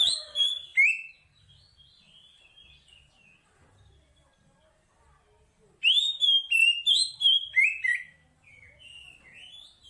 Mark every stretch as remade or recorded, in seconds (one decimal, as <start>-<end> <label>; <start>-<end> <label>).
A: 0.0-9.9 recorded